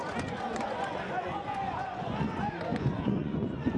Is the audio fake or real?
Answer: fake